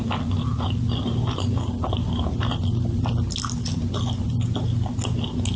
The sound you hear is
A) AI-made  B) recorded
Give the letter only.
B